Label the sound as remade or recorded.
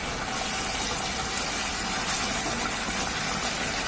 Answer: recorded